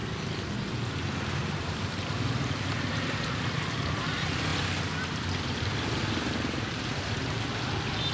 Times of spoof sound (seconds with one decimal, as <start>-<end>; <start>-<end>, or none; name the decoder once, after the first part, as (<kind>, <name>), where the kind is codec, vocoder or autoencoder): 1.3-8.1 (vocoder, BigVGAN v2)